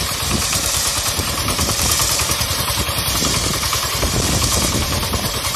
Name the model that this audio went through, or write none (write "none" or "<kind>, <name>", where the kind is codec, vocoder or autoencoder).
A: vocoder, BigVGAN v2